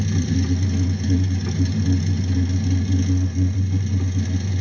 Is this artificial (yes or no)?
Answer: no